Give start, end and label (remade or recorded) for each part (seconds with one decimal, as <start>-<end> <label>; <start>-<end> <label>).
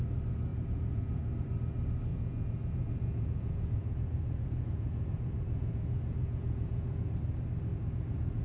0.0-0.5 recorded; 0.5-1.3 remade; 1.3-2.1 recorded; 2.1-7.1 remade; 7.1-7.7 recorded; 7.7-8.4 remade